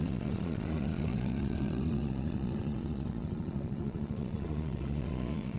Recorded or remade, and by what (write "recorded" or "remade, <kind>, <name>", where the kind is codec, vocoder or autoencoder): remade, vocoder, Vocos